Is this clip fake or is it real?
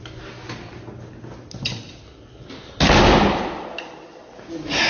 real